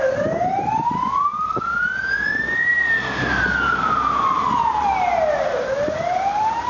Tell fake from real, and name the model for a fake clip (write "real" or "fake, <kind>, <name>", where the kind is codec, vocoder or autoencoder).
real